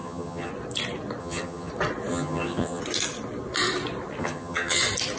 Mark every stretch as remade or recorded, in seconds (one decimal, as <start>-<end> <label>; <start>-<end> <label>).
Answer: 0.0-0.5 remade; 0.5-1.2 recorded; 1.2-1.7 remade; 1.7-2.1 recorded; 2.1-2.8 remade; 2.8-4.2 recorded; 4.2-4.8 remade; 4.8-5.2 recorded